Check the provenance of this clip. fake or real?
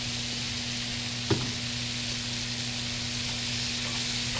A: real